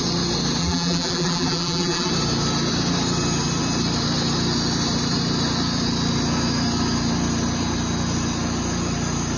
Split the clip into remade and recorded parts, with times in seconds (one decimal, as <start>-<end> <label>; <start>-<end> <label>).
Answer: 0.0-0.6 recorded; 0.6-2.1 remade; 2.1-9.4 recorded